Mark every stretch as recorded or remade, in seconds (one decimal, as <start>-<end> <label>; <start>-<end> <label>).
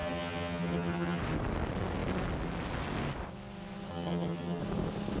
0.0-1.2 remade; 1.2-3.9 recorded; 3.9-4.6 remade; 4.6-5.2 recorded